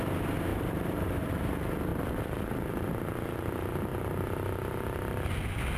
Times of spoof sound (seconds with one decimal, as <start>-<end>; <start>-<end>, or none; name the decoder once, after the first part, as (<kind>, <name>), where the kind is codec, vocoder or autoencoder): 0.5-1.3 (vocoder, BigVGAN v2); 1.9-2.7